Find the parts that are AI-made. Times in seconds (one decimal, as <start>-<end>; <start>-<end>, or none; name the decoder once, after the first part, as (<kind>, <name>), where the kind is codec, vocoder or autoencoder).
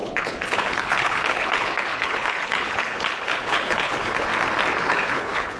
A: 0.0-4.3 (codec, HILCodec); 4.8-5.6